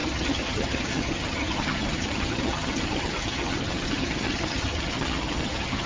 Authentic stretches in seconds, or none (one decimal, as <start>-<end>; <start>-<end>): none